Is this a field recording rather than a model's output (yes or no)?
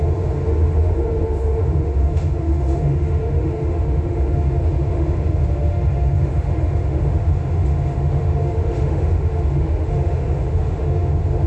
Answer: no